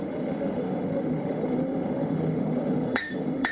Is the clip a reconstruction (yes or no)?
yes